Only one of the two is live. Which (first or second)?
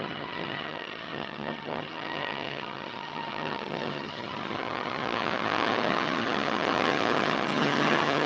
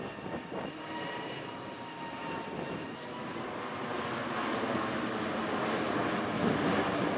second